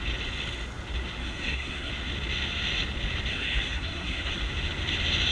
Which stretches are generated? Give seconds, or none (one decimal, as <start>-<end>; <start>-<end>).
1.2-1.9; 3.3-4.4